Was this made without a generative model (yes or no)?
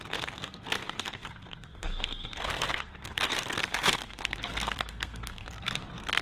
no